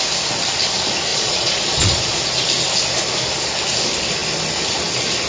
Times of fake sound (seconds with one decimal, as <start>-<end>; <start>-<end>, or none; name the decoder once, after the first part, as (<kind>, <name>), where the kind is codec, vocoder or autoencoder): 1.1-2.2 (vocoder, Vocos)